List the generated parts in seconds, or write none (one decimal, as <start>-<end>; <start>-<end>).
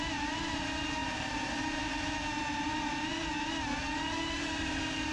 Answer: 0.0-3.1; 4.0-5.1